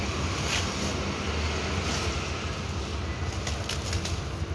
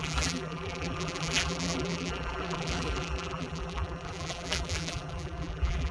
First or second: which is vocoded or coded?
second